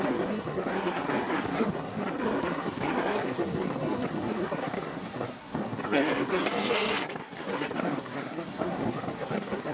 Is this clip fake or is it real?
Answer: fake